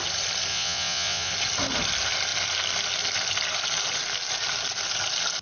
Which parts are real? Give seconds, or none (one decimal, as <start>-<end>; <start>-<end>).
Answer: 0.0-0.5; 1.3-5.4